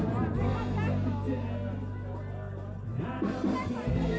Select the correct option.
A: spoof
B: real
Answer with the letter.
B